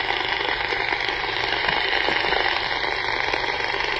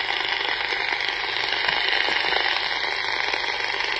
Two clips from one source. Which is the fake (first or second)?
first